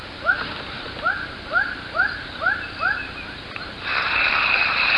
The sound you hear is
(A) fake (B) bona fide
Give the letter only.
B